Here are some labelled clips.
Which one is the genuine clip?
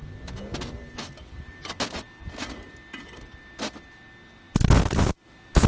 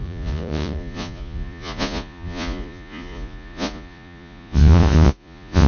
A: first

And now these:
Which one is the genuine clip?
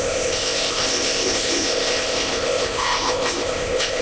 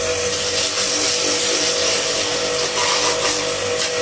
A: second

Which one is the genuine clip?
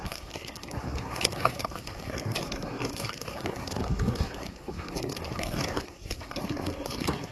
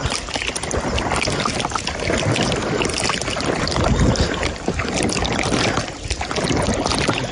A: second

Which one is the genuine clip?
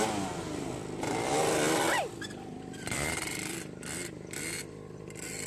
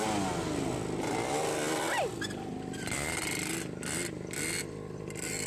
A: second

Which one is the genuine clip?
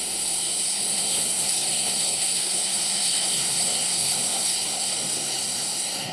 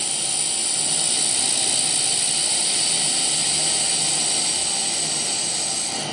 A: second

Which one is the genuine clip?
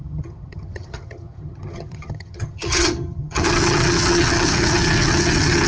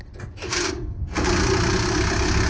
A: second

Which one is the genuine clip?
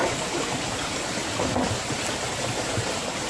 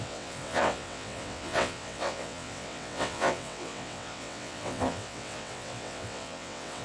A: first